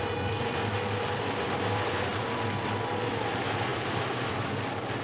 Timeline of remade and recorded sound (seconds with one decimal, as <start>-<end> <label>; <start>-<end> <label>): 0.0-3.7 recorded; 3.7-4.5 remade; 4.5-5.0 recorded